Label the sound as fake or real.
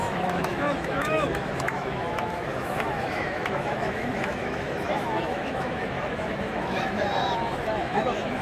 fake